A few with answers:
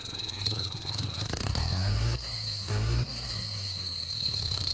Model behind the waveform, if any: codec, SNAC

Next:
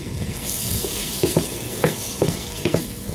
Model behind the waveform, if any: codec, SNAC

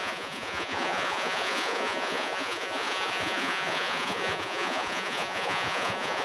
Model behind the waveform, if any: vocoder, Vocos